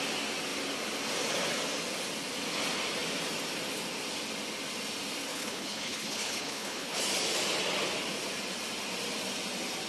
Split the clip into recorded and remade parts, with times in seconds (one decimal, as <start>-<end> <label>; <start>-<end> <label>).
0.0-5.3 recorded; 5.3-7.0 remade; 7.0-9.9 recorded